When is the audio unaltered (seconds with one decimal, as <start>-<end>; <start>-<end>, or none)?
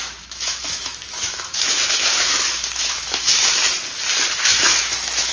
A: 3.6-4.4